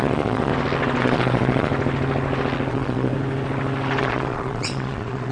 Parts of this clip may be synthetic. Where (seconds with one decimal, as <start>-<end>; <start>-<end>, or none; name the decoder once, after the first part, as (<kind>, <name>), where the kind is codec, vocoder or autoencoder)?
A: 0.0-0.5 (vocoder, Vocos); 1.0-1.7; 2.7-3.1; 4.0-5.3